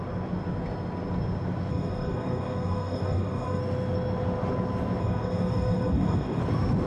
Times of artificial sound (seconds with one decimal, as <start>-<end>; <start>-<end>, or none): 1.7-3.6; 5.0-6.4